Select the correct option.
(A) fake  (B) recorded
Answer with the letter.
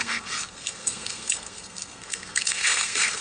A